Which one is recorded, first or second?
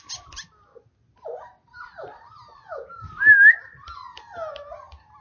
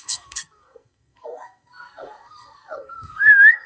first